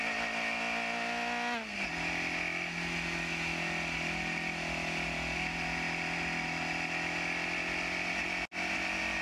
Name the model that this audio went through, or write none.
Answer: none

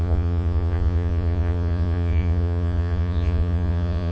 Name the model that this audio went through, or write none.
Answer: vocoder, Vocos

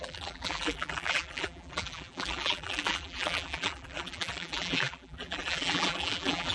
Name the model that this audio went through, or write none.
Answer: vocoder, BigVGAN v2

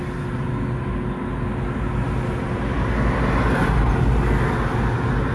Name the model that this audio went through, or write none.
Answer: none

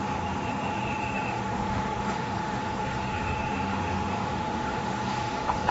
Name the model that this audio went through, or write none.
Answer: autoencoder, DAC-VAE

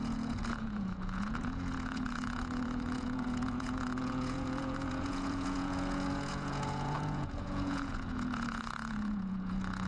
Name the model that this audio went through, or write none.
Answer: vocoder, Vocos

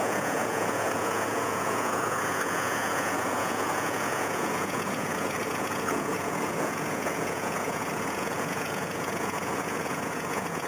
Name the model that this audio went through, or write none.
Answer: vocoder, Vocos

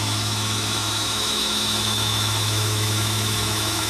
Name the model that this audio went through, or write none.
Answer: autoencoder, DAC-VAE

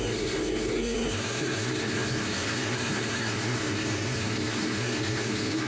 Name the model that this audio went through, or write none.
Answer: codec, SNAC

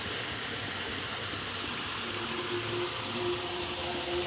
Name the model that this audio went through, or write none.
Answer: none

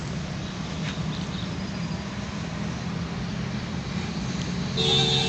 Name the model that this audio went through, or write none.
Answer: none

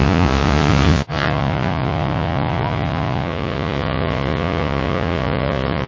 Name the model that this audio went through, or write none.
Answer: vocoder, Vocos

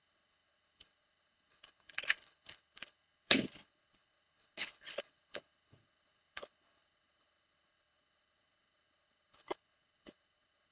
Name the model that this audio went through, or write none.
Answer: codec, HILCodec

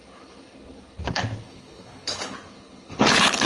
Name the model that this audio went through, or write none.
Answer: codec, HILCodec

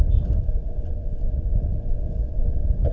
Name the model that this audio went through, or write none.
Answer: none